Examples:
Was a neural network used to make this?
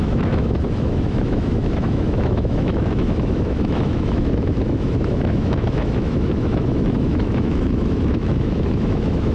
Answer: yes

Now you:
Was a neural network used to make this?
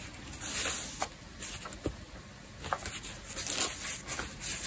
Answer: no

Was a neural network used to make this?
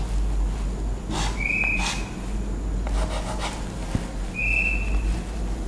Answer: no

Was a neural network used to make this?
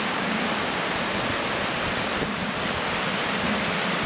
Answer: no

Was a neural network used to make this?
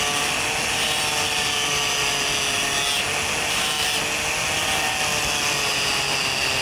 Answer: no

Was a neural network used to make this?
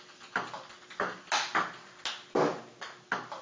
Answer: no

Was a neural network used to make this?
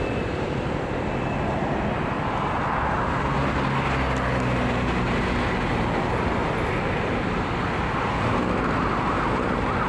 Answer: no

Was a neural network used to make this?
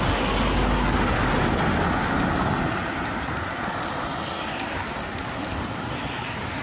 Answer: no